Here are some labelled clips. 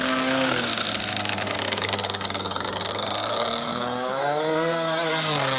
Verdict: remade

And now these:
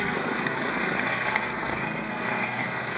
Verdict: remade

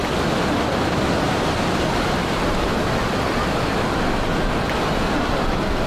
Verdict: recorded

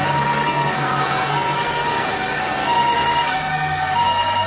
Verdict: remade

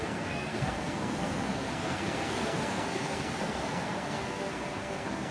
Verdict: remade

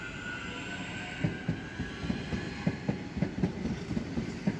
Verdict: recorded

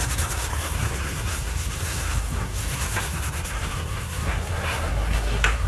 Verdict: remade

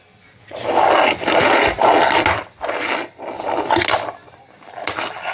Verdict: recorded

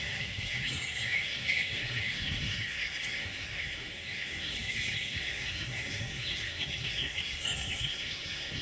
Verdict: remade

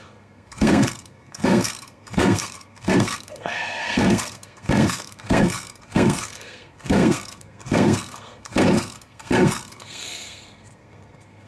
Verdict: remade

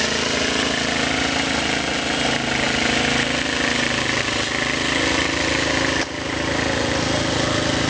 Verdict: recorded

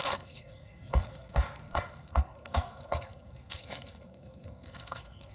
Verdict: remade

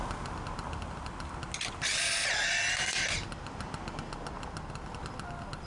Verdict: recorded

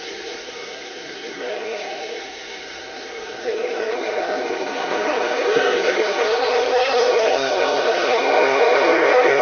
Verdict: remade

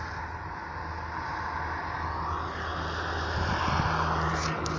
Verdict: recorded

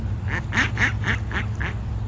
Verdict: recorded